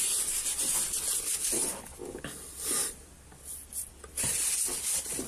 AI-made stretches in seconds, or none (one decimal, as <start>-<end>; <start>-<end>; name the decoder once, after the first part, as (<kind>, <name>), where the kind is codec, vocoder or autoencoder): 1.4-4.3 (vocoder, BigVGAN v2)

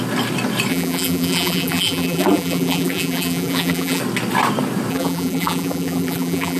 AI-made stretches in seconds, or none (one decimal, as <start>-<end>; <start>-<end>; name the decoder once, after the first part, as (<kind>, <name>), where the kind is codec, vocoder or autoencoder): 0.7-4.0 (vocoder, BigVGAN v2); 4.9-6.6

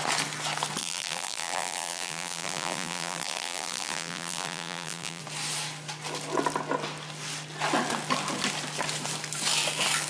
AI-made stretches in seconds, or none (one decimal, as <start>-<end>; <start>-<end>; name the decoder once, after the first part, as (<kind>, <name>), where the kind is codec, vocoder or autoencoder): 0.8-5.2 (vocoder, BigVGAN v2)

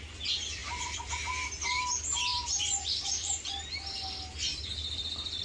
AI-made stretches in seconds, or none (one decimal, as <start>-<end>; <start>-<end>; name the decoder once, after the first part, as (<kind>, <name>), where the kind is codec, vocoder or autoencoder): 0.6-1.1 (vocoder, BigVGAN v2); 2.3-3.5; 4.5-5.4

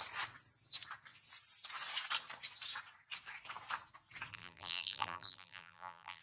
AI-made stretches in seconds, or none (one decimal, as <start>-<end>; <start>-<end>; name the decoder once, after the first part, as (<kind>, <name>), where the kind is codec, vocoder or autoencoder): 4.3-6.2 (vocoder, BigVGAN v2)

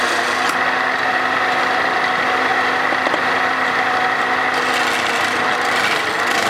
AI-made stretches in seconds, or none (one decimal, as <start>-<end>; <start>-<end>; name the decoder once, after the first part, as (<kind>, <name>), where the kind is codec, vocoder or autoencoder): none